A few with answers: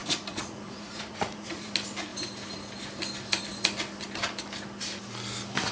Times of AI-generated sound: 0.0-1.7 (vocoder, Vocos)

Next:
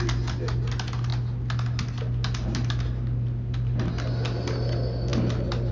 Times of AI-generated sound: none

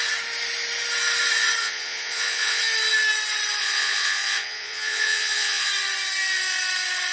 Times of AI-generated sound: 1.6-2.6 (vocoder, Vocos); 3.6-5.7

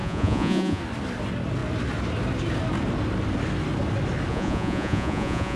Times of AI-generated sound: 0.0-0.8 (vocoder, Vocos); 4.3-5.6

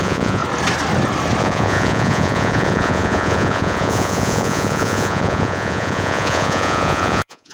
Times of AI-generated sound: 0.0-0.4 (vocoder, Vocos); 1.4-7.5

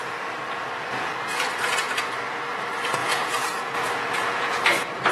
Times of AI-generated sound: 1.3-2.0 (vocoder, Vocos); 3.0-4.6